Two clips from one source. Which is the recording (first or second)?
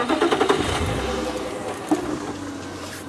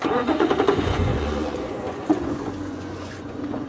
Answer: first